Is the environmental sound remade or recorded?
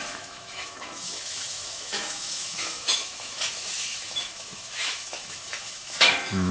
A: remade